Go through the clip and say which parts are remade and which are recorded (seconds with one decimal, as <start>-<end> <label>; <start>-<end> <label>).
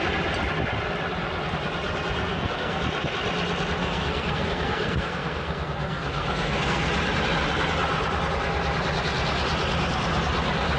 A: 0.0-2.3 recorded; 2.3-2.8 remade; 2.8-3.8 recorded; 3.8-6.9 remade; 6.9-10.8 recorded